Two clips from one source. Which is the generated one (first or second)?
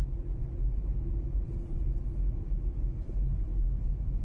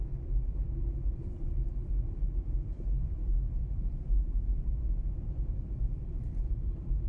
second